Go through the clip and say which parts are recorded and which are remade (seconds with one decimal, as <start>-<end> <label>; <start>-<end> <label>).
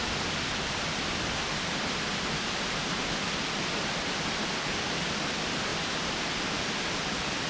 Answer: 0.0-7.5 recorded